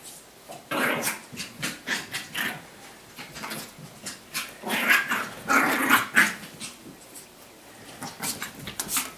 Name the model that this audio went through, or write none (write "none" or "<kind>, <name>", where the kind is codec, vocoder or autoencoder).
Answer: none